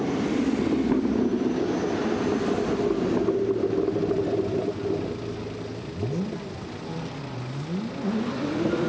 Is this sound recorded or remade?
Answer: recorded